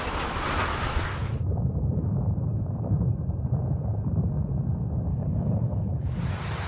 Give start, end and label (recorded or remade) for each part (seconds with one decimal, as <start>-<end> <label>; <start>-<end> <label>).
0.0-5.1 recorded; 5.1-6.2 remade; 6.2-6.7 recorded